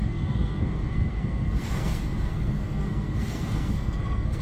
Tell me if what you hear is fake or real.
fake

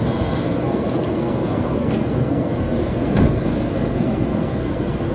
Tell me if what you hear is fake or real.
fake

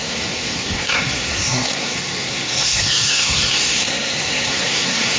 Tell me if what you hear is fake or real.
fake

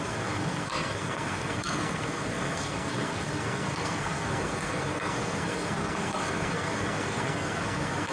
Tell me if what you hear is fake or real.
fake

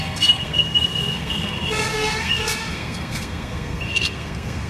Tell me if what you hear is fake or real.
fake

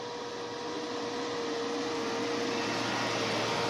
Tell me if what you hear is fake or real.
real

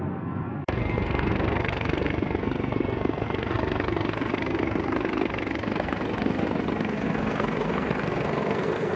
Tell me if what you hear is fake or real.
fake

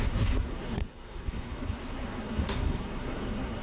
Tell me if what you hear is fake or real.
fake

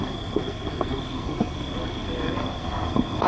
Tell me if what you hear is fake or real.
fake